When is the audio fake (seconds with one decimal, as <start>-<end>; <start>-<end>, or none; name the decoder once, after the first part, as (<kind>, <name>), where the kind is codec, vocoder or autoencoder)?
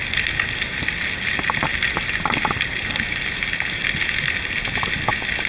none